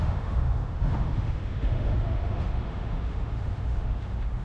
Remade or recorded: remade